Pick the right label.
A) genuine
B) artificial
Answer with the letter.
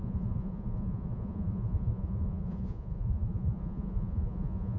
B